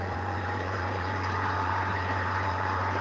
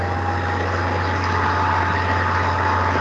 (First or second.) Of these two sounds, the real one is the second